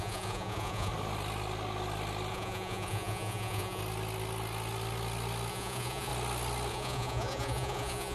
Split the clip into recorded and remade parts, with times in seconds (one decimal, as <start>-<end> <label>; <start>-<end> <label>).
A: 0.0-0.9 remade; 0.9-2.3 recorded; 2.3-3.8 remade; 3.8-5.5 recorded; 5.5-6.1 remade; 6.1-6.7 recorded; 6.7-8.1 remade